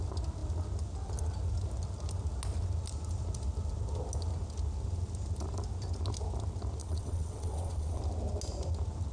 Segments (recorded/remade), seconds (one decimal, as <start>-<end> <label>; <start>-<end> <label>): 0.0-6.8 recorded; 6.8-8.0 remade; 8.0-9.1 recorded